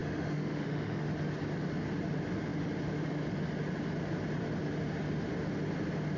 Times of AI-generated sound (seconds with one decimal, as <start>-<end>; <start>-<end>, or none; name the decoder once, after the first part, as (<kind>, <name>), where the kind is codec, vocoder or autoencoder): 0.0-1.1 (autoencoder, DAC-VAE)